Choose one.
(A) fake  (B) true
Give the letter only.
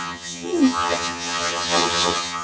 A